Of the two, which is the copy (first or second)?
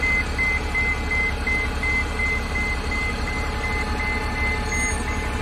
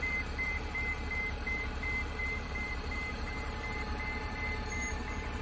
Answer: second